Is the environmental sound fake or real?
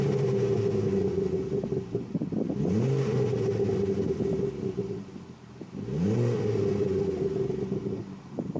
real